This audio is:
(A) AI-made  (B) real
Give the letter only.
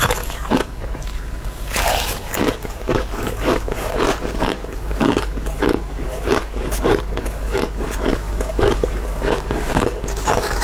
A